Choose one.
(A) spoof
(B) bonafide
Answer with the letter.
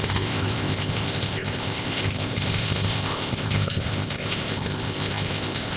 A